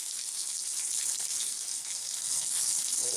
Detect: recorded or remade remade